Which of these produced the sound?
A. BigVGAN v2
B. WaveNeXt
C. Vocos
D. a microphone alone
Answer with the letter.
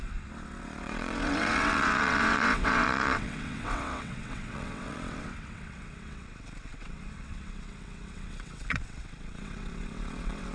B